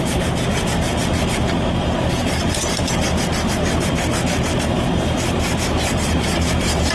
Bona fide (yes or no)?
yes